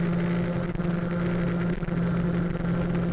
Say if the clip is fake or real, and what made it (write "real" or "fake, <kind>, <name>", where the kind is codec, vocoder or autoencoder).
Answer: real